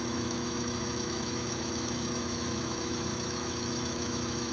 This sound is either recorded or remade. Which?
remade